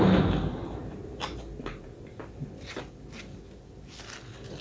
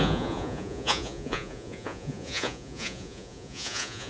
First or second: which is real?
first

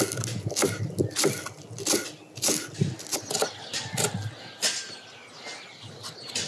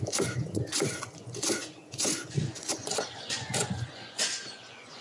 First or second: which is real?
first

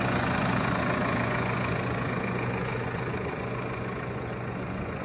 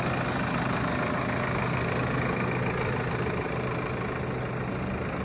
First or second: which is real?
second